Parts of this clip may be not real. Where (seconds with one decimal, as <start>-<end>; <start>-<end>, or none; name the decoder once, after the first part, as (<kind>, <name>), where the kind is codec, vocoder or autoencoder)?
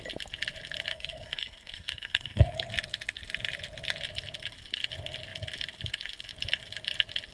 0.9-2.7 (codec, SNAC)